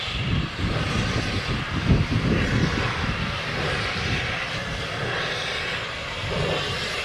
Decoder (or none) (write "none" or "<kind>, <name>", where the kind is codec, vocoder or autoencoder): none